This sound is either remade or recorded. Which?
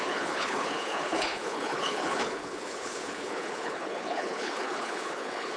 remade